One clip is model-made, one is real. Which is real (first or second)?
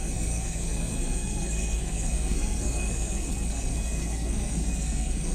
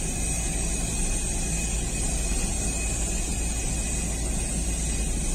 second